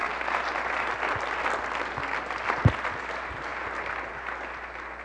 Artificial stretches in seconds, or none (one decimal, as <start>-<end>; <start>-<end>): none

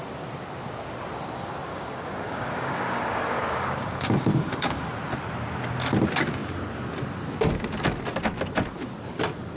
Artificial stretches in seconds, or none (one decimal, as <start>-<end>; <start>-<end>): 1.7-4.8